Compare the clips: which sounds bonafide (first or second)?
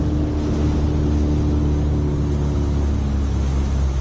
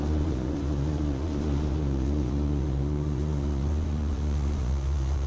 first